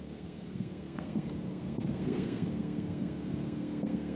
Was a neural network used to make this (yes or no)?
yes